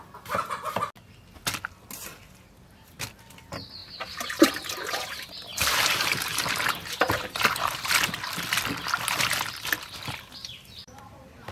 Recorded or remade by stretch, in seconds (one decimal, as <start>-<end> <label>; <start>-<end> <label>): 0.0-3.8 recorded; 3.8-4.5 remade; 4.5-5.5 recorded; 5.5-7.9 remade; 7.9-11.5 recorded